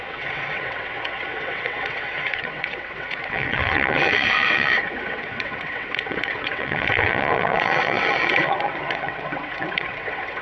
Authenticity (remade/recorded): remade